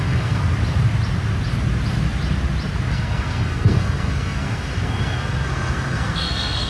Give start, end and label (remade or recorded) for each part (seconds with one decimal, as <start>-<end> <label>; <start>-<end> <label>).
0.0-0.4 remade; 0.4-2.9 recorded; 2.9-6.7 remade